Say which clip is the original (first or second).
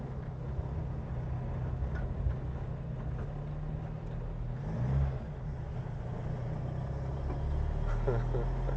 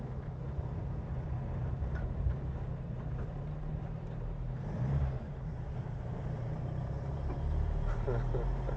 first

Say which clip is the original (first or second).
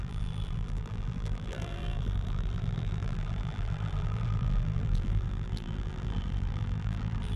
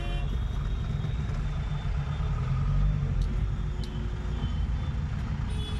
second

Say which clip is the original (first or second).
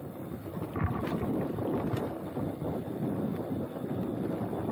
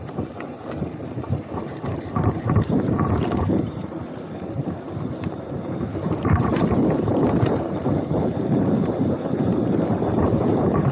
first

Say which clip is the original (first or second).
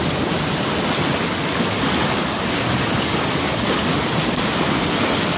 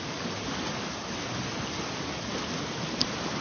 first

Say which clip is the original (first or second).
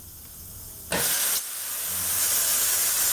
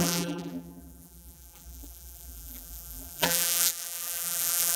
first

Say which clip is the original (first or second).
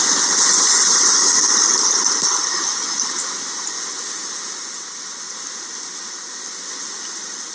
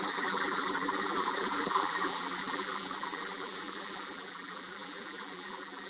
first